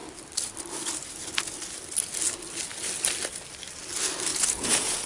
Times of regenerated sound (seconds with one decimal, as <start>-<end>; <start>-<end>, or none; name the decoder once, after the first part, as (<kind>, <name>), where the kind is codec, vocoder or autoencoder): 4.3-5.1 (vocoder, Vocos)